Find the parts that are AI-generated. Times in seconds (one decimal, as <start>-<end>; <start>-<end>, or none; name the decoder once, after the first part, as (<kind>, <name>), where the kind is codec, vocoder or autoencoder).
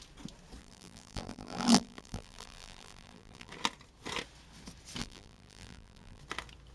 0.6-3.5 (vocoder, BigVGAN v2); 5.0-6.2